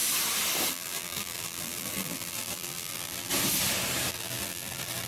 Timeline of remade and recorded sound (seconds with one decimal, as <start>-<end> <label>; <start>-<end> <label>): 0.0-0.7 recorded; 0.7-3.3 remade; 3.3-4.1 recorded; 4.1-5.1 remade